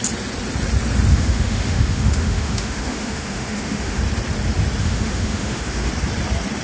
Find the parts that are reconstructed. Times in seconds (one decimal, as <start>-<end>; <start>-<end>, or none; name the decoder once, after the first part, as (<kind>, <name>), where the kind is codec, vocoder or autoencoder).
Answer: 1.1-4.0 (autoencoder, DAC-VAE); 4.8-5.9